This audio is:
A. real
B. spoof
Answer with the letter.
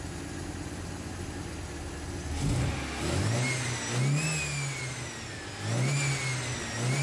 A